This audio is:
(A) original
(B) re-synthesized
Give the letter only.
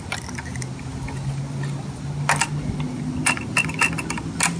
A